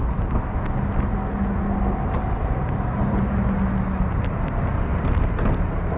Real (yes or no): yes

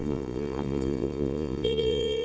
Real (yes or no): no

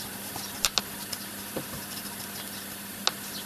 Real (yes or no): yes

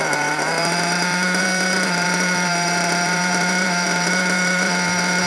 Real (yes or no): no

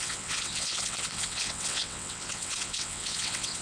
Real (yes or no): no